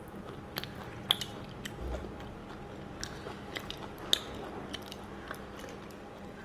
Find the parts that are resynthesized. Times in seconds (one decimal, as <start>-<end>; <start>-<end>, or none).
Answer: 0.0-2.4